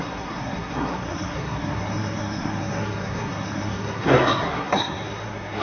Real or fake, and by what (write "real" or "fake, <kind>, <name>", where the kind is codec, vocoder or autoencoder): fake, codec, SNAC